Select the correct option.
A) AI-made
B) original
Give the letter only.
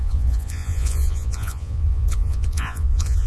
A